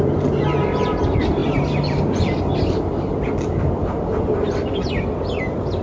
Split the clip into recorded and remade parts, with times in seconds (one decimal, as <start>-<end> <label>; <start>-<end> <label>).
0.0-5.8 recorded